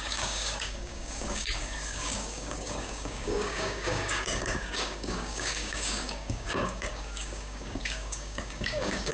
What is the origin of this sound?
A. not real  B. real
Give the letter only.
A